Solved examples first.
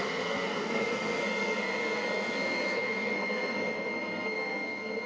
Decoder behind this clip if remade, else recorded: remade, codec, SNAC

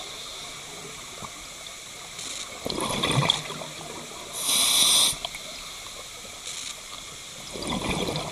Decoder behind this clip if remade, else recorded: recorded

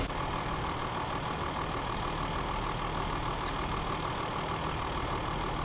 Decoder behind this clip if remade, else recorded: recorded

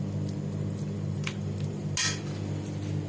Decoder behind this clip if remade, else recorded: recorded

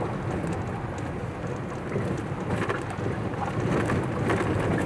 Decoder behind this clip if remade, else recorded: recorded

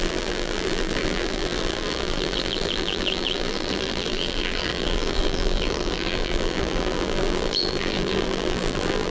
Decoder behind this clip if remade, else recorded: remade, vocoder, BigVGAN v2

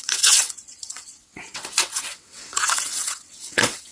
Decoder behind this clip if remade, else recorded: remade, vocoder, WaveNeXt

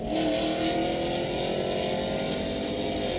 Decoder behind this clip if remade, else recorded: recorded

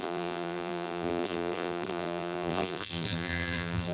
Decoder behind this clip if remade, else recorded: remade, vocoder, BigVGAN v2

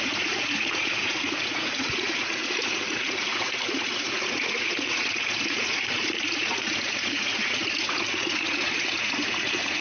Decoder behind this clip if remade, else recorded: remade, vocoder, Vocos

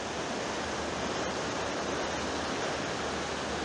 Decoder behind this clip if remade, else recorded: recorded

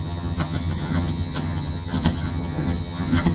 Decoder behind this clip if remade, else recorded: remade, vocoder, HiFi-GAN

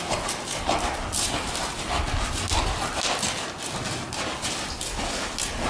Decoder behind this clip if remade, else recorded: recorded